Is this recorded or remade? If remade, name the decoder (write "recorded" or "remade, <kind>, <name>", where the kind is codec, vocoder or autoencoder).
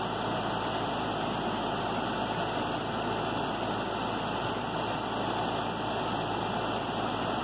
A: recorded